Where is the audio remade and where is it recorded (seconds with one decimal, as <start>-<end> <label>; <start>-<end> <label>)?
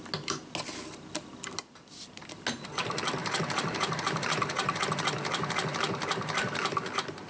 0.0-3.2 recorded; 3.2-4.8 remade; 4.8-7.3 recorded